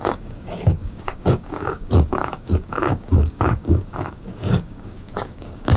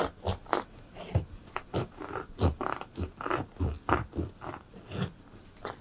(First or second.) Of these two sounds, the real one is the second